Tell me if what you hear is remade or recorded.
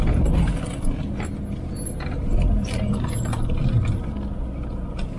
recorded